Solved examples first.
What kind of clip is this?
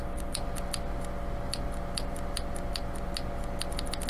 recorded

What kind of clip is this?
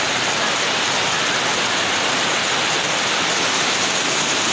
remade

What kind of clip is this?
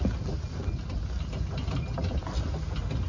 recorded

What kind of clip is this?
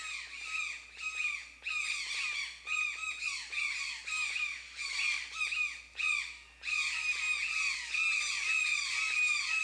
remade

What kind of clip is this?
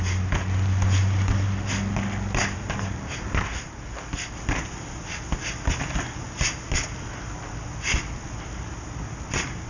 recorded